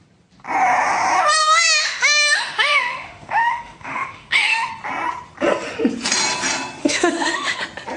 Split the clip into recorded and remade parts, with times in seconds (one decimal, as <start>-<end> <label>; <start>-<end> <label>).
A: 0.0-1.4 recorded; 1.4-4.7 remade; 4.7-6.8 recorded; 6.8-7.6 remade; 7.6-8.0 recorded